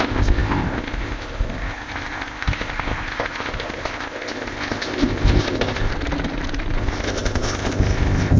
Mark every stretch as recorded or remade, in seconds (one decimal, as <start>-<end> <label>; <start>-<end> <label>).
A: 0.0-5.9 remade; 5.9-6.8 recorded; 6.8-8.4 remade